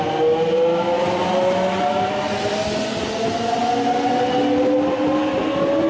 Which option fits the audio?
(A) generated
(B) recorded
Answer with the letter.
B